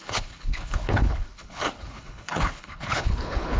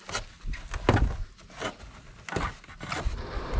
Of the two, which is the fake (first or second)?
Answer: first